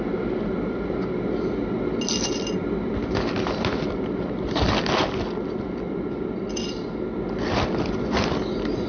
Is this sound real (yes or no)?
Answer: yes